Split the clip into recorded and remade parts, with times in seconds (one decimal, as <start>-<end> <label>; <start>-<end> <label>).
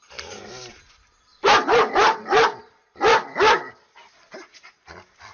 0.0-1.3 recorded; 1.3-2.6 remade; 2.6-5.3 recorded